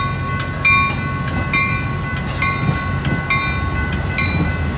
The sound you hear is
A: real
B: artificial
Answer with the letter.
A